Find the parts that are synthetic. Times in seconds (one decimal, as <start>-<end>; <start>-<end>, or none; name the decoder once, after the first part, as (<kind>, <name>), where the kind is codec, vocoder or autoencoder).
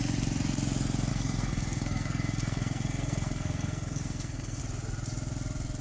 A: 1.1-4.6 (codec, SNAC)